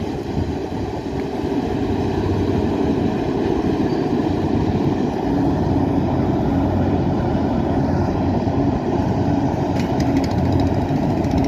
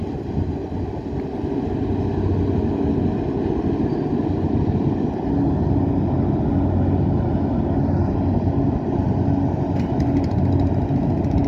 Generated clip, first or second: first